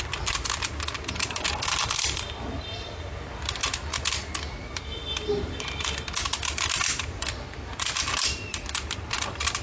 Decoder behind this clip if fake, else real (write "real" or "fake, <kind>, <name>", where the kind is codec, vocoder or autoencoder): fake, vocoder, BigVGAN v2